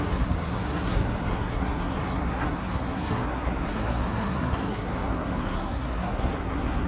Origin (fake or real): fake